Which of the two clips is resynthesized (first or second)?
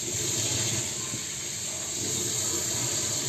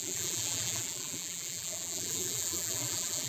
second